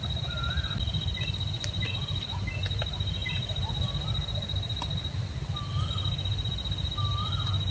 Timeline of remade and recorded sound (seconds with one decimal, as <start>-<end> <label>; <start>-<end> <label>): 0.0-3.2 recorded; 3.2-3.7 remade; 3.7-7.7 recorded